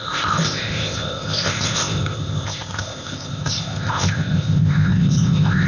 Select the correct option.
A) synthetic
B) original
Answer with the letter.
A